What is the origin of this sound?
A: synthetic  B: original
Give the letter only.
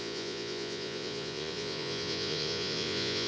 A